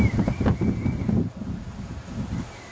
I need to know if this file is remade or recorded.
recorded